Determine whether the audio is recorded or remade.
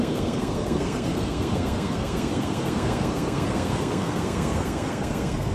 remade